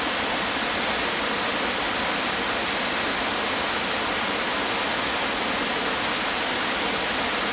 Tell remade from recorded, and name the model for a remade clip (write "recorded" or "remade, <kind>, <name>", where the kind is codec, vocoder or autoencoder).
recorded